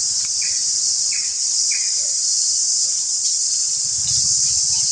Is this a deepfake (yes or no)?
no